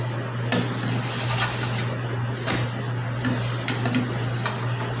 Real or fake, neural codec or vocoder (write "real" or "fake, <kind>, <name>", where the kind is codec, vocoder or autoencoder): real